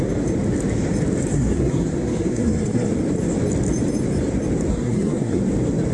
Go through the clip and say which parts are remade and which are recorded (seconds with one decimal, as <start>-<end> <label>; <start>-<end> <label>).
0.0-1.3 recorded; 1.3-2.9 remade; 2.9-4.7 recorded; 4.7-5.4 remade; 5.4-5.9 recorded